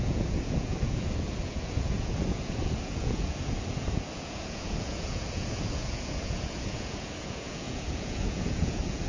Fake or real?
fake